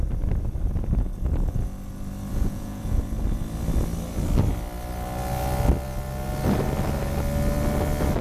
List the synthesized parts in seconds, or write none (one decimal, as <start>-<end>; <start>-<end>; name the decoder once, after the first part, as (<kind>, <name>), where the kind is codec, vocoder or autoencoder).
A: 2.3-3.0 (vocoder, Vocos)